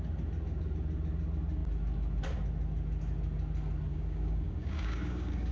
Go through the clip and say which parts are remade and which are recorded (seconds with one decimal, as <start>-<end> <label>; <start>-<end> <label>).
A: 0.0-3.9 recorded; 3.9-5.5 remade